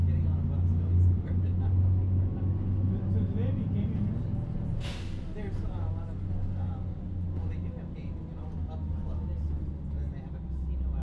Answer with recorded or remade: recorded